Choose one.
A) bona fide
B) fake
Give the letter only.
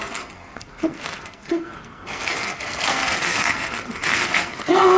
B